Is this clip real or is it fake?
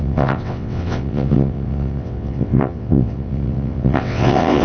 fake